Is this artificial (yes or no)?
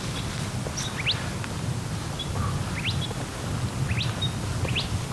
no